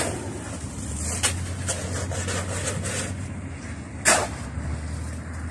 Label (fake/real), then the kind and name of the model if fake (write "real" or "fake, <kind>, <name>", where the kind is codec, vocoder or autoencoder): real